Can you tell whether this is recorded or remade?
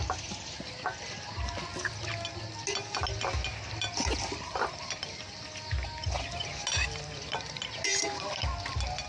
recorded